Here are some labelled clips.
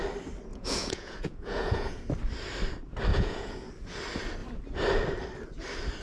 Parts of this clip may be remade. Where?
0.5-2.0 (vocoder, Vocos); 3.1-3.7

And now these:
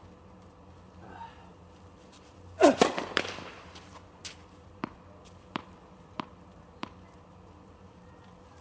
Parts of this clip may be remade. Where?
0.0-8.6 (vocoder, BigVGAN v2)

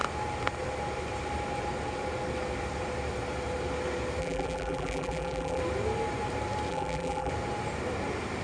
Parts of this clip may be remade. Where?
4.2-5.6 (vocoder, BigVGAN v2); 6.7-7.3

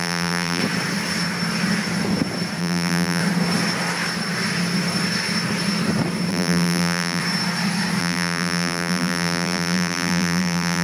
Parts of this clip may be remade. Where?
0.0-0.6 (vocoder, BigVGAN v2); 2.6-3.2; 6.3-7.2; 8.0-10.8